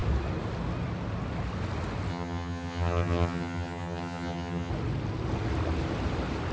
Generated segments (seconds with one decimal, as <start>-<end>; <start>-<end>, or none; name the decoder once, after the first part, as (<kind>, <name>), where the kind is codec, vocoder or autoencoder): 2.1-4.7 (vocoder, HiFi-GAN)